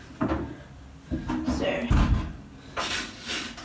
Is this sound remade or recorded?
recorded